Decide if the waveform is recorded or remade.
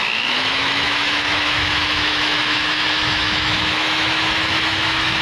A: remade